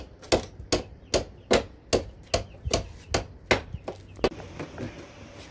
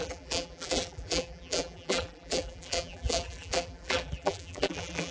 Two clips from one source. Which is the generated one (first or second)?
second